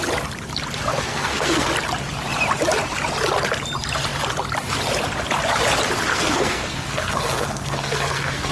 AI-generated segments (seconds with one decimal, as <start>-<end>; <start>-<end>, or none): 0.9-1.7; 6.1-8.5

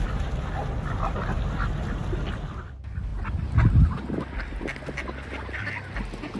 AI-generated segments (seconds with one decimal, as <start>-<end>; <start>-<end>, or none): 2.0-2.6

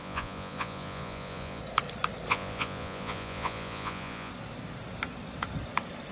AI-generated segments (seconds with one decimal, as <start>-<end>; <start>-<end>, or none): 0.0-1.6; 2.3-4.3

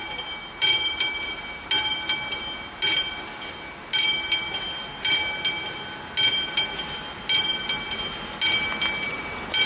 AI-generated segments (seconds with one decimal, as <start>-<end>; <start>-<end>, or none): none

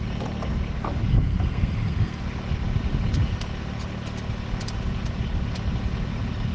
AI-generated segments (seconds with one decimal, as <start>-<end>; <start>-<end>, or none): 1.1-2.2